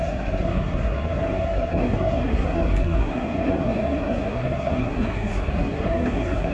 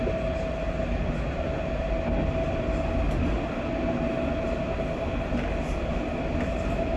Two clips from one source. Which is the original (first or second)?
second